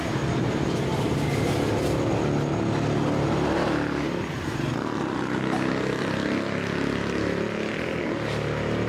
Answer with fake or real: real